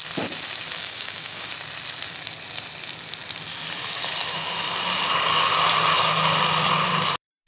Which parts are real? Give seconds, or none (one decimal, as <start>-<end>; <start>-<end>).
0.0-0.8; 1.5-7.5